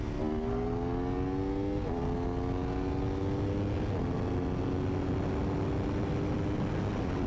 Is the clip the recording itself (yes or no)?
yes